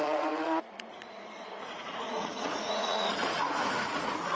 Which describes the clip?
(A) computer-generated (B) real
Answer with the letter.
A